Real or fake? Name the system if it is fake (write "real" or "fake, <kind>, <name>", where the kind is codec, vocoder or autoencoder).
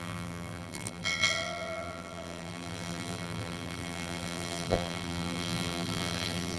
fake, vocoder, BigVGAN v2